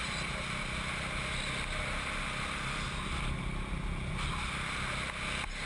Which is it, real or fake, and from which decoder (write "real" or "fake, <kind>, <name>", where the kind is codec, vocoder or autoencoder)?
real